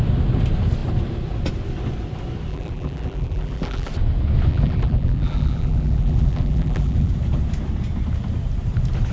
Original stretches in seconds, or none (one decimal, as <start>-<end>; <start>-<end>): 0.0-2.5; 3.9-4.5; 7.1-9.1